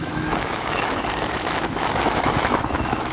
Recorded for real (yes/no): no